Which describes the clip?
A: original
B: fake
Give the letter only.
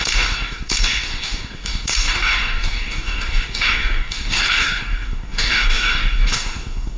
B